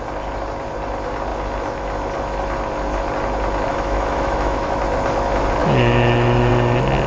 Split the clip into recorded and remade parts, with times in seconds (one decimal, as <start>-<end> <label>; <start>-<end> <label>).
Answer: 0.0-3.7 recorded; 3.7-4.8 remade; 4.8-5.6 recorded; 5.6-6.5 remade; 6.5-7.1 recorded